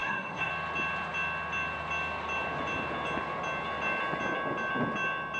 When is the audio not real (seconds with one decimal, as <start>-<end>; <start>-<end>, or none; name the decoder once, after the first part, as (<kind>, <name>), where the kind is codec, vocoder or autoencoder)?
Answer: 0.0-0.5 (codec, SNAC)